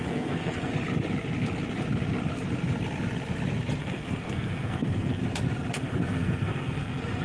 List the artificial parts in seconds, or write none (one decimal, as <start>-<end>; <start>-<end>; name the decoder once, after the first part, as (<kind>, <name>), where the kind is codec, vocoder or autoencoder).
0.0-0.7 (codec, SNAC); 3.8-5.2; 5.8-7.2